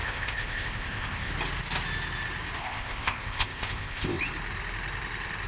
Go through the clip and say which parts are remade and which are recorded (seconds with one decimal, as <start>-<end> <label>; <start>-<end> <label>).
0.0-1.3 remade; 1.3-2.6 recorded; 2.6-4.2 remade; 4.2-5.5 recorded